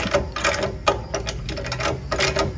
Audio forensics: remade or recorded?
recorded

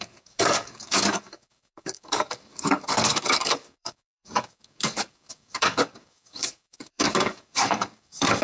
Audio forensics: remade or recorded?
remade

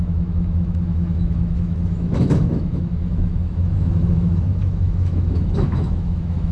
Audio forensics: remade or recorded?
remade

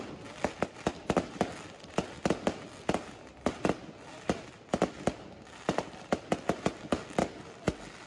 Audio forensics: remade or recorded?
recorded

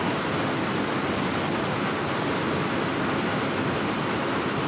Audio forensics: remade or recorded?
recorded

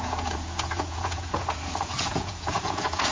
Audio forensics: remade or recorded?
remade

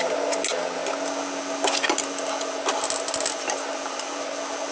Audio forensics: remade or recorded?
recorded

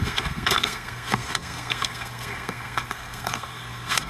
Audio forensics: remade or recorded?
remade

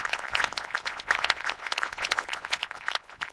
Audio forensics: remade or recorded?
remade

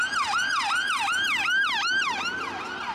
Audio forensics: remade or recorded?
recorded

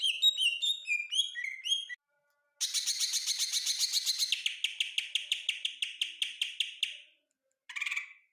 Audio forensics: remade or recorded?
recorded